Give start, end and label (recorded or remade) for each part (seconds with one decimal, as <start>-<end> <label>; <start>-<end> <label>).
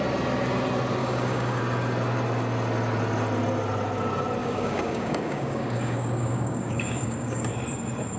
0.0-1.0 recorded; 1.0-1.6 remade; 1.6-4.4 recorded; 4.4-7.6 remade; 7.6-8.2 recorded